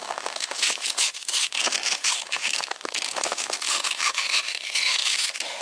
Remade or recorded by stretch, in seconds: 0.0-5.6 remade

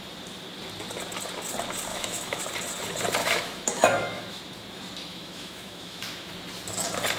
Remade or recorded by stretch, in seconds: 0.0-1.9 recorded; 1.9-2.4 remade; 2.4-3.2 recorded; 3.2-4.4 remade; 4.4-5.1 recorded; 5.1-6.3 remade; 6.3-7.2 recorded

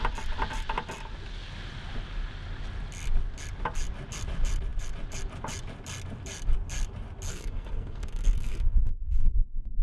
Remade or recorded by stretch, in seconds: 0.0-7.3 recorded; 7.3-9.8 remade

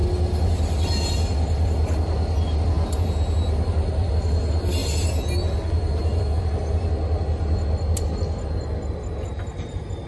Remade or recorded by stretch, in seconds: 0.0-10.1 recorded

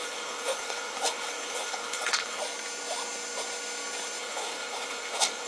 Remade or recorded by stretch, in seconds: 0.0-2.4 remade; 2.4-4.2 recorded; 4.2-5.5 remade

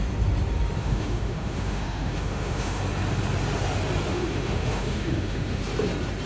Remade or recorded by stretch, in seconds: 0.0-0.8 recorded; 0.8-2.8 remade; 2.8-4.1 recorded; 4.1-5.6 remade; 5.6-6.3 recorded

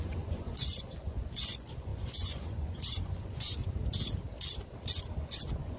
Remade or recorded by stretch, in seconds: 0.0-3.6 remade; 3.6-5.2 recorded; 5.2-5.8 remade

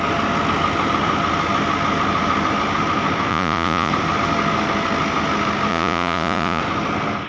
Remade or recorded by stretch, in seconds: 0.0-3.3 recorded; 3.3-3.9 remade; 3.9-5.7 recorded; 5.7-6.6 remade; 6.6-7.3 recorded